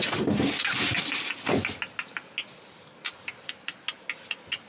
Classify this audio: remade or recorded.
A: recorded